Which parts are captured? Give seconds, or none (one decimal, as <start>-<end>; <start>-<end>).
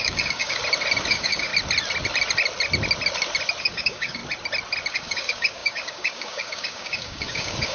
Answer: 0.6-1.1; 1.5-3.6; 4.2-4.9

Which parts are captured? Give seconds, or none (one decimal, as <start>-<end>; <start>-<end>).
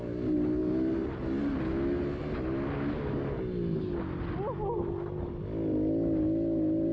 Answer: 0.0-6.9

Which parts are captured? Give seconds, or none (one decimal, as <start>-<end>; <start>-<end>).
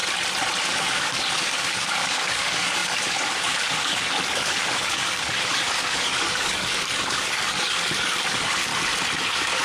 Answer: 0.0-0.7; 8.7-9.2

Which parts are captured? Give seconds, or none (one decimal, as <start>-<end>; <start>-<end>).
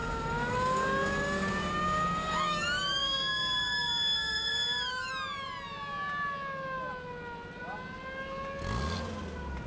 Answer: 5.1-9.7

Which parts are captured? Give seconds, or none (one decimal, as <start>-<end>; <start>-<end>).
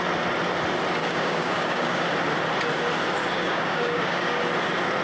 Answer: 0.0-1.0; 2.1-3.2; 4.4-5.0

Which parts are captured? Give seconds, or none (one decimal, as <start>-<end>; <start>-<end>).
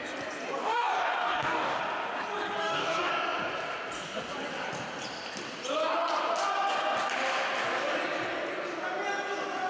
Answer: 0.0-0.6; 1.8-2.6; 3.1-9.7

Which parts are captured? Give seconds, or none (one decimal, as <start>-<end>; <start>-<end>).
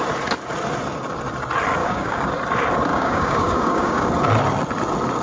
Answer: 0.0-1.8; 2.3-2.9; 4.1-5.2